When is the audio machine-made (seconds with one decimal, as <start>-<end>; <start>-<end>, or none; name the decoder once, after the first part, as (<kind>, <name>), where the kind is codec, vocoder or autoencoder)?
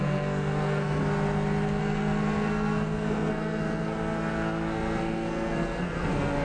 0.0-1.0 (codec, SNAC); 1.8-6.4